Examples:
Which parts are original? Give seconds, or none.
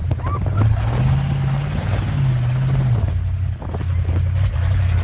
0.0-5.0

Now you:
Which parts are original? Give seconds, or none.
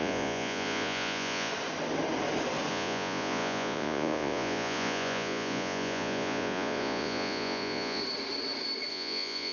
1.5-2.7; 8.0-8.9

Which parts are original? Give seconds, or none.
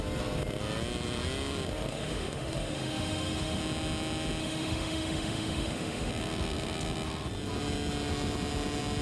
0.0-1.9; 3.6-4.4; 6.1-9.0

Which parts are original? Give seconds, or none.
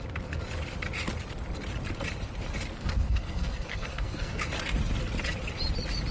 0.0-2.7; 4.4-6.1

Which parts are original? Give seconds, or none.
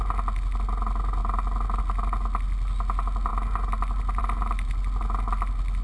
0.0-5.8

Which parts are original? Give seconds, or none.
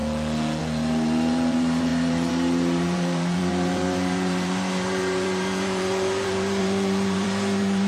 0.0-0.6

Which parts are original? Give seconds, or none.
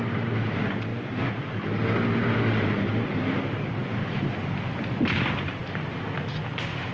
0.0-0.9; 1.4-6.9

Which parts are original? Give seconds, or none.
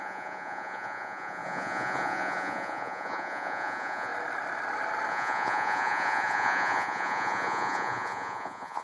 4.1-5.1